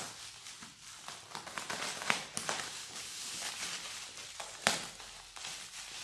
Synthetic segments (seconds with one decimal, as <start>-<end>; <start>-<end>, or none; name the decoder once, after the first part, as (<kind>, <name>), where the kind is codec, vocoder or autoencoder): 2.8-3.5 (codec, DAC)